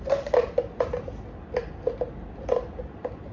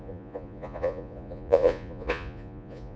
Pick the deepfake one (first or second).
second